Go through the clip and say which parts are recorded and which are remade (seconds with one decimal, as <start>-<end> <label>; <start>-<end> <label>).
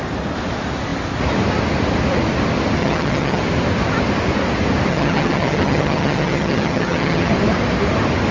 0.0-2.8 recorded; 2.8-3.4 remade; 3.4-4.9 recorded; 4.9-7.3 remade; 7.3-8.3 recorded